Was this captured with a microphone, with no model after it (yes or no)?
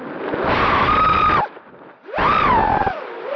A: yes